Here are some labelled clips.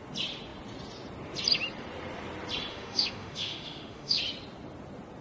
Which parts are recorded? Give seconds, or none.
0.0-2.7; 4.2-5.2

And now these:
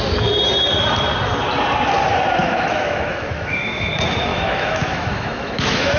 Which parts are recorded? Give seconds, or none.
0.0-2.4; 3.9-4.3

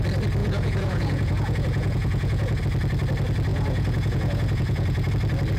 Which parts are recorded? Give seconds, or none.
0.0-0.4; 2.6-3.5; 5.1-5.6

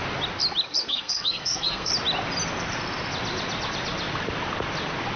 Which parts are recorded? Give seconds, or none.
0.0-0.8; 1.9-5.2

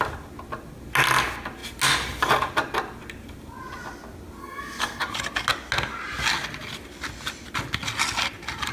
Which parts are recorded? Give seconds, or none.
0.0-4.4; 5.0-8.7

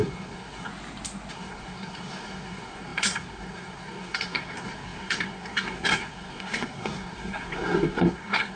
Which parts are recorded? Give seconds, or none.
0.7-1.3